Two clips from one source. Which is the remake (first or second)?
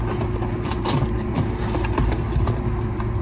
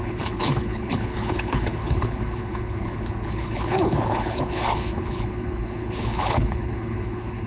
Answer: second